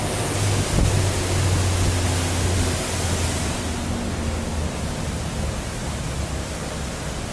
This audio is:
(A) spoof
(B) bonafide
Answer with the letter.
B